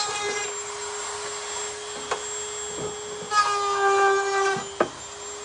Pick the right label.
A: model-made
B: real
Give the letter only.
B